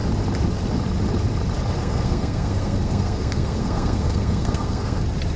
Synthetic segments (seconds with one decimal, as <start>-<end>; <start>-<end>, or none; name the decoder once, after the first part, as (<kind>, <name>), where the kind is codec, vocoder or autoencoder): 1.8-5.0 (codec, SNAC)